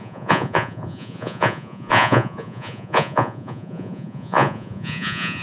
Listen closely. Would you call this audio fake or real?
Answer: fake